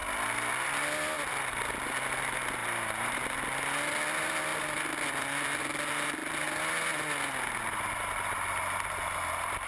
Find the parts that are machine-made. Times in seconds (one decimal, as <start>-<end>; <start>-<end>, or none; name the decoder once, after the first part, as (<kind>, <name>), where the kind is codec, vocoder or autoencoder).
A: 2.6-3.4 (vocoder, BigVGAN v2)